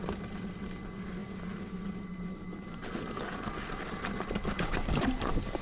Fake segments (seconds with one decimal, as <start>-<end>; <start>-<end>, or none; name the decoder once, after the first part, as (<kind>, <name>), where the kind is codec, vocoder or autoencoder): none